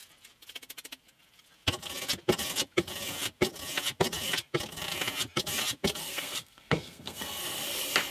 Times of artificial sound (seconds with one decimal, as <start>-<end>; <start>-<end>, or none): 6.0-7.4